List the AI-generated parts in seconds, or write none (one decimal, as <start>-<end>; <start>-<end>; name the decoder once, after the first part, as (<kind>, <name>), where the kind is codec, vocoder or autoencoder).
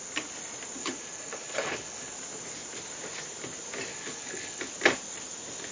0.8-2.1 (codec, HILCodec); 3.9-4.6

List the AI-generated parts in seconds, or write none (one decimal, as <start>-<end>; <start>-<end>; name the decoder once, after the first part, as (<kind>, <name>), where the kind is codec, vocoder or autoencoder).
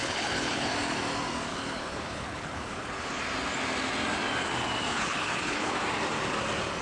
0.0-0.7 (codec, HILCodec); 1.5-3.2; 4.9-5.7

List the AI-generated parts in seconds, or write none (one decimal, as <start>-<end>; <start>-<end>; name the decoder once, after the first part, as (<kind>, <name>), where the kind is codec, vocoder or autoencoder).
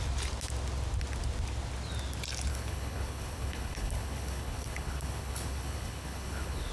2.5-6.7 (codec, HILCodec)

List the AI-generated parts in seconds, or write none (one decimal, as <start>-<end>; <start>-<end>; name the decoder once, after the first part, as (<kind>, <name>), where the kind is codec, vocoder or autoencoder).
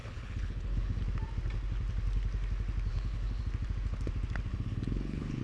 0.0-1.0 (codec, HILCodec); 2.9-3.4; 4.5-5.4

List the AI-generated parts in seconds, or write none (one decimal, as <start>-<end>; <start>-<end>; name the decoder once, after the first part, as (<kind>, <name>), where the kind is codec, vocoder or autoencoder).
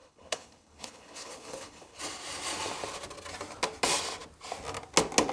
0.0-2.0 (codec, HILCodec)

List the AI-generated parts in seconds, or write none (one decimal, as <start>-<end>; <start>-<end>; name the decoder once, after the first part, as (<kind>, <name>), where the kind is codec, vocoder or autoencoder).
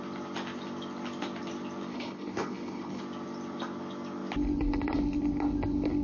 1.9-3.0 (codec, HILCodec)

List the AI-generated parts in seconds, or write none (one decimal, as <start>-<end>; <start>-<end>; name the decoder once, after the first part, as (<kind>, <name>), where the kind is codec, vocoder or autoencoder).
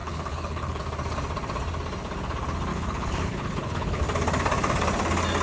0.0-0.8 (codec, HILCodec); 2.7-4.0